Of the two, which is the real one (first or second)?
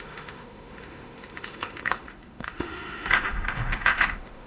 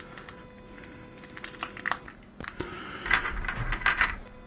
second